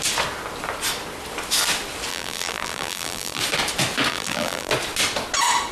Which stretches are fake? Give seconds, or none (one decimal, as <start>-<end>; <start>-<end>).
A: 2.1-3.4; 4.1-4.7